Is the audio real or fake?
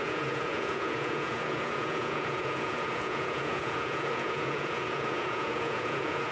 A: fake